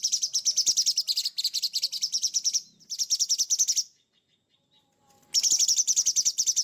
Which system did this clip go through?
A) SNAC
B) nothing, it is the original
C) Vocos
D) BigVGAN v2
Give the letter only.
B